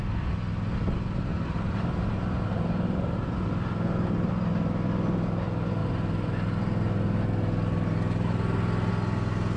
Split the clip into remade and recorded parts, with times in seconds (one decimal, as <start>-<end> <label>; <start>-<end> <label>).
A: 0.0-1.3 recorded; 1.3-4.3 remade; 4.3-9.6 recorded